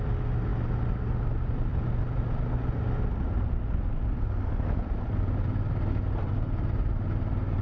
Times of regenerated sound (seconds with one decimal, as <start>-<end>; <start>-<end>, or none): none